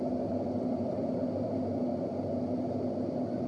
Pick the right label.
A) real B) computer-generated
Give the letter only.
A